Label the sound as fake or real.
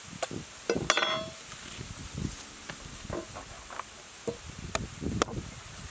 real